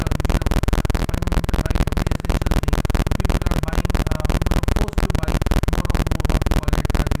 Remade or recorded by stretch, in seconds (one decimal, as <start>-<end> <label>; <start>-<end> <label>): 0.0-1.0 recorded; 1.0-2.0 remade; 2.0-7.2 recorded